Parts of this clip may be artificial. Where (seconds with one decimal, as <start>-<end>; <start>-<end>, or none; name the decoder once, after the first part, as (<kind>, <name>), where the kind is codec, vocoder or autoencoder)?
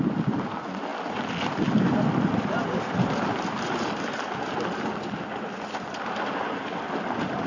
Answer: none